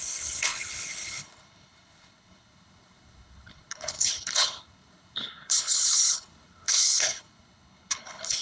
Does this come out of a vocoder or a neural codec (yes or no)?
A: yes